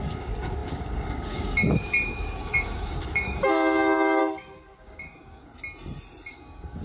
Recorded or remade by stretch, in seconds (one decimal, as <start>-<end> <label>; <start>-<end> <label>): 0.0-5.5 remade; 5.5-6.3 recorded; 6.3-6.8 remade